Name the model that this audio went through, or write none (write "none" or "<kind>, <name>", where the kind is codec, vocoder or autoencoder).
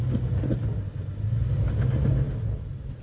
none